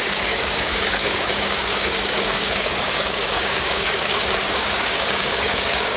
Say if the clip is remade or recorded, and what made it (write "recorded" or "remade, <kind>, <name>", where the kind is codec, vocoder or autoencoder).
remade, codec, DAC